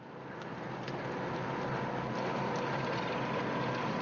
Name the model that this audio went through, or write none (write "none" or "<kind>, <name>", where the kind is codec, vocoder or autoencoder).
none